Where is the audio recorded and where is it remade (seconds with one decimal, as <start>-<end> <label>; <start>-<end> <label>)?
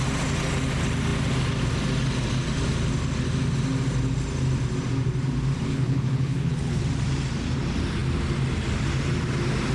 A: 0.0-5.7 recorded; 5.7-6.8 remade; 6.8-9.7 recorded